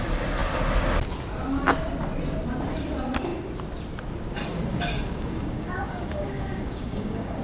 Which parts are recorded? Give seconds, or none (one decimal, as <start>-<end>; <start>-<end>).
0.0-4.7